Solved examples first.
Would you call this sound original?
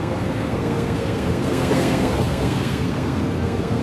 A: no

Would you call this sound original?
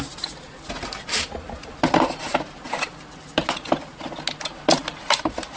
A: yes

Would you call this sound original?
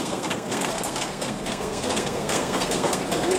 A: no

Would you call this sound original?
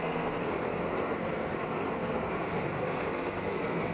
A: no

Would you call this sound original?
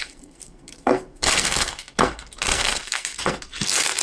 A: no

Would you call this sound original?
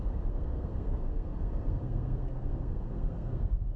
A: no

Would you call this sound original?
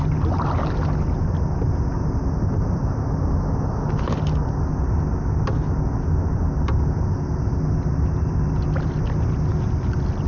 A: yes